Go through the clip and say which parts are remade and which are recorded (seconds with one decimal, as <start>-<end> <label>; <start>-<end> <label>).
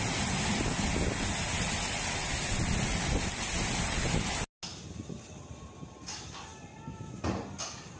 0.0-8.0 recorded